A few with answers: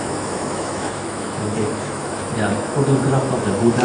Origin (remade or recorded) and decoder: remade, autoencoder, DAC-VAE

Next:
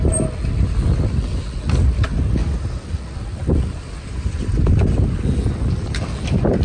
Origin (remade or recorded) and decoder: recorded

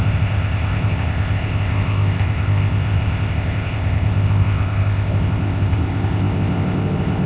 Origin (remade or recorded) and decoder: remade, codec, ZipCodec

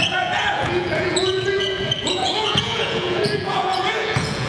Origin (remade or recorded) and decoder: remade, vocoder, Vocos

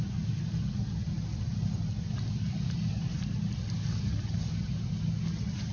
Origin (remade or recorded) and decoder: recorded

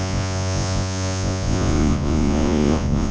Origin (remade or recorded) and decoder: remade, vocoder, Vocos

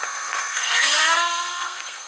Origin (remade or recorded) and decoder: remade, codec, SNAC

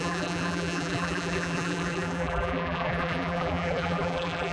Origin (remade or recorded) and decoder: remade, vocoder, BigVGAN v2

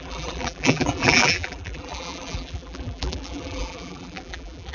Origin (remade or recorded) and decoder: remade, vocoder, BigVGAN v2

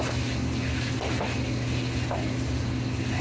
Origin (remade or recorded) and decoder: recorded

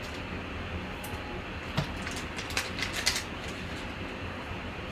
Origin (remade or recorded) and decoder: recorded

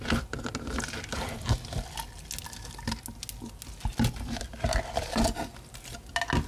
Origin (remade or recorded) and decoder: recorded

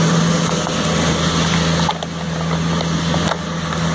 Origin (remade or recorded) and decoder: recorded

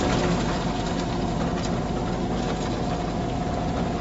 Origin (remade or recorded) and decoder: recorded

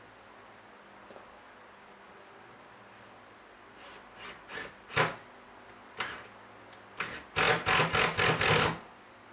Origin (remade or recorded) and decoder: recorded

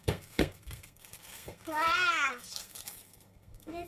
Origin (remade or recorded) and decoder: remade, codec, SNAC